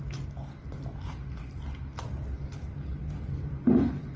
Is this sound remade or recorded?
recorded